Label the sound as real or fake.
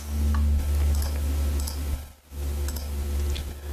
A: real